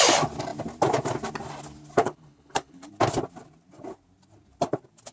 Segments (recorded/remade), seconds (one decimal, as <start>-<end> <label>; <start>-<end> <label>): 0.0-2.0 recorded; 2.0-2.9 remade; 2.9-5.1 recorded